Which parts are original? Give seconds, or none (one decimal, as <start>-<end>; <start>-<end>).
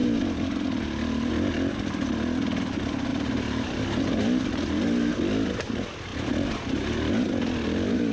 0.0-8.1